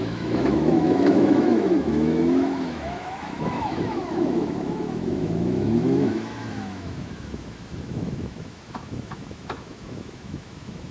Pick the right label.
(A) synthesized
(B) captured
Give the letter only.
A